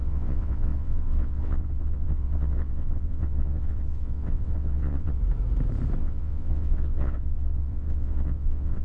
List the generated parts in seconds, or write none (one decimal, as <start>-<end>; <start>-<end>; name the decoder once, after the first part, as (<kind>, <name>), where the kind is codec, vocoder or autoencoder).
0.0-5.2 (vocoder, WaveNeXt); 6.0-8.8